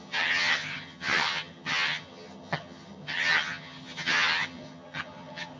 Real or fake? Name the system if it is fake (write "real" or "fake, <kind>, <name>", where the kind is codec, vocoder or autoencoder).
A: fake, vocoder, HiFi-GAN